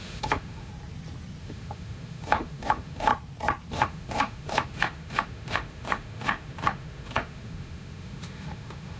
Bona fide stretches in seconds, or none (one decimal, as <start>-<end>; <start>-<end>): 0.7-1.4; 3.1-3.7